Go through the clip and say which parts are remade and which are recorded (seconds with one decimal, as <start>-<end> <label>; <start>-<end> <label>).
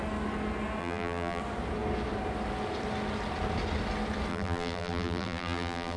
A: 0.0-0.8 recorded; 0.8-1.4 remade; 1.4-4.3 recorded; 4.3-6.0 remade